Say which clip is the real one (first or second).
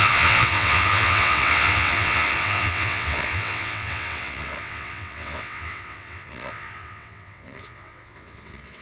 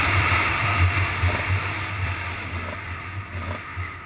second